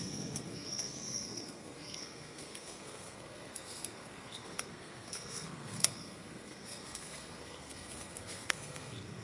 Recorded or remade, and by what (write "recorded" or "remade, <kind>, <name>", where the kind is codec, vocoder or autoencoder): remade, codec, SNAC